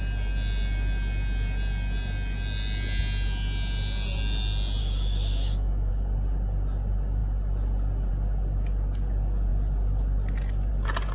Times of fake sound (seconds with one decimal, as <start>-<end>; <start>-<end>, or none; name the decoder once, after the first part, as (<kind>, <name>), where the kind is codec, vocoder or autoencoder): 4.8-5.9 (autoencoder, DAC-VAE)